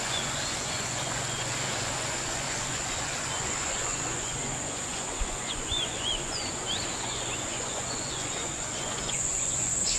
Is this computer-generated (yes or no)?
yes